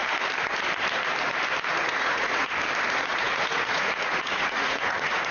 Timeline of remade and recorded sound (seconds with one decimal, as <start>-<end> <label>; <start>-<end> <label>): 0.0-1.7 recorded; 1.7-2.5 remade; 2.5-3.1 recorded; 3.1-5.3 remade